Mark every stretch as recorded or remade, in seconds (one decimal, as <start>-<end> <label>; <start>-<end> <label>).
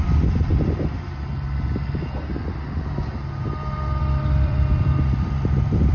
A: 0.0-0.5 remade; 0.5-4.0 recorded; 4.0-5.9 remade